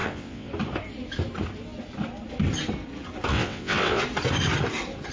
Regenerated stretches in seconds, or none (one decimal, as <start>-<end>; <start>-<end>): 0.0-0.5; 3.3-4.0